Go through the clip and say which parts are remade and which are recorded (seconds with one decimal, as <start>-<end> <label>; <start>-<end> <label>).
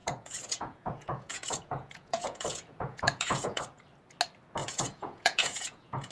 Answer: 0.0-3.6 remade; 3.6-4.6 recorded; 4.6-6.1 remade